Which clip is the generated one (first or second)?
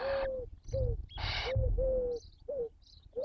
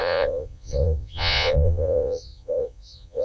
second